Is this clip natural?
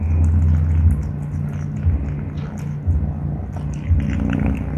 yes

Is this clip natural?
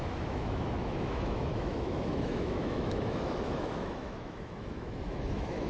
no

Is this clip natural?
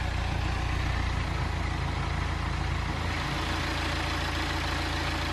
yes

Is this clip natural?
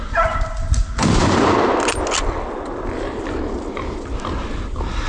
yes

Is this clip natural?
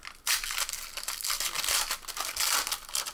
yes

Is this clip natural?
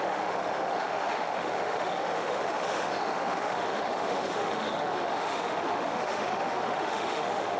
no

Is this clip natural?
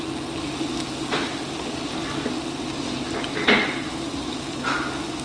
yes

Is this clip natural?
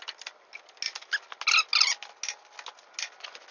yes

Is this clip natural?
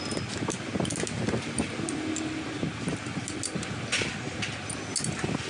yes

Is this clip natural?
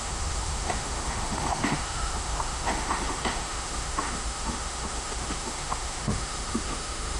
no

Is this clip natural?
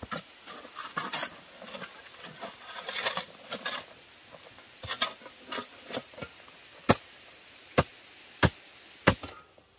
yes